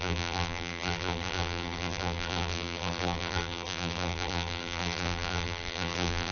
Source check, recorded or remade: remade